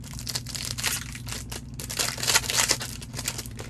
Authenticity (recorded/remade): recorded